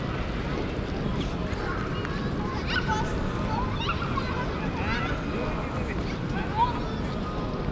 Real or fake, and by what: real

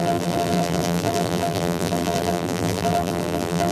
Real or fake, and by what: fake, vocoder, BigVGAN v2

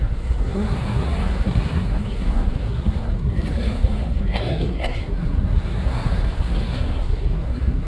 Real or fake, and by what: fake, codec, SNAC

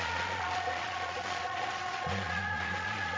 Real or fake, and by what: fake, vocoder, Vocos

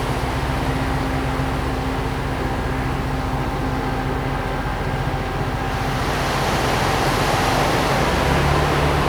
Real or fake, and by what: real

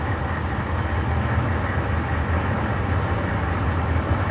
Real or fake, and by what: real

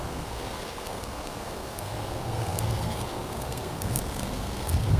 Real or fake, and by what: fake, codec, SNAC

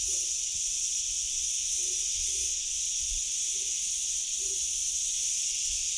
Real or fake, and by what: fake, vocoder, WaveNeXt